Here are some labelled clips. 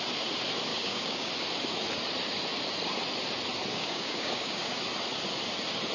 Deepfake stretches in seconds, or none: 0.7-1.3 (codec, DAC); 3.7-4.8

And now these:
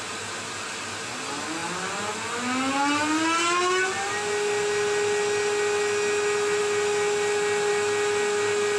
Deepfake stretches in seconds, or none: none

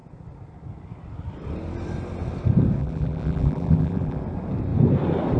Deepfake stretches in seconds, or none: 2.8-4.2 (vocoder, BigVGAN v2)

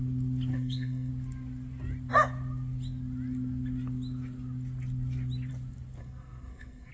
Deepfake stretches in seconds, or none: 0.5-1.1 (codec, SNAC); 6.0-6.9